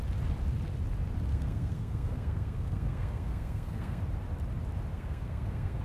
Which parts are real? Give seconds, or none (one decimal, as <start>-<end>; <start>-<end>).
0.0-1.3; 4.0-4.9